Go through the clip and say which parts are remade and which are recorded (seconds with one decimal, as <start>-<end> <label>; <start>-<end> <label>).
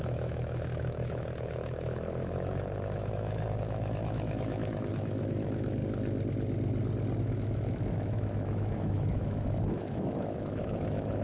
0.0-5.8 remade; 5.8-7.2 recorded; 7.2-11.2 remade